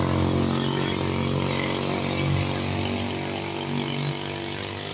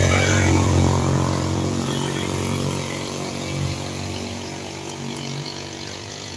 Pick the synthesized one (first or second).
second